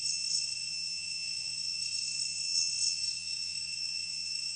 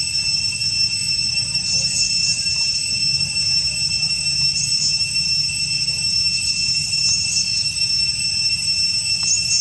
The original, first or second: second